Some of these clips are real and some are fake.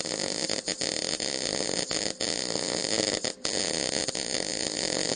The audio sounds real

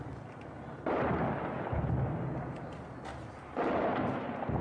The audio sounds real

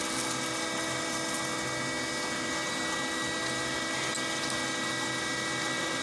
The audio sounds real